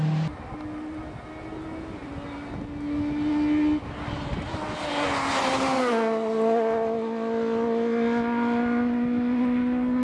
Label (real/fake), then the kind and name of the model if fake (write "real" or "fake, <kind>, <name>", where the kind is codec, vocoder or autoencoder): real